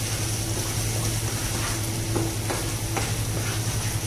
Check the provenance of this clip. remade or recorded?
recorded